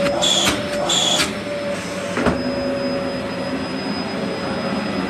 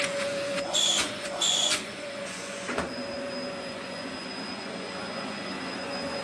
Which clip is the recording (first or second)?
first